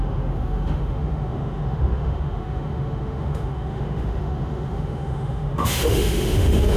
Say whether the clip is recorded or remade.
remade